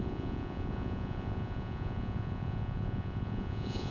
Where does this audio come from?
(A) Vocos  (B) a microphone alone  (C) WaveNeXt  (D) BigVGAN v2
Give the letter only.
A